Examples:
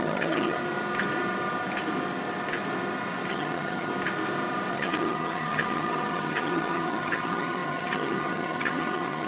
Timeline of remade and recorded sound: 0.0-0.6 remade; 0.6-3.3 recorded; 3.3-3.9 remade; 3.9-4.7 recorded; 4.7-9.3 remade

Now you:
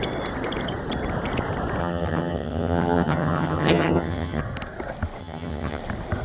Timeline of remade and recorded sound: 0.0-1.8 recorded; 1.8-4.4 remade; 4.4-5.2 recorded; 5.2-5.8 remade; 5.8-6.2 recorded

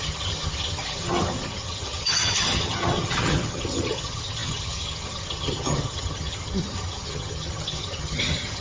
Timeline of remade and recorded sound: 0.0-8.6 remade

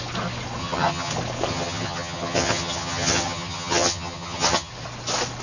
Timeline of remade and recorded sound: 0.0-0.6 recorded; 0.6-1.1 remade; 1.1-1.5 recorded; 1.5-4.7 remade; 4.7-5.4 recorded